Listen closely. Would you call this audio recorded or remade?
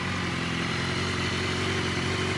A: recorded